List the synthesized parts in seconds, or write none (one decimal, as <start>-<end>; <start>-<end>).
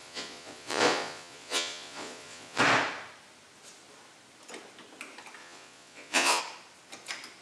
0.0-2.6; 5.4-6.4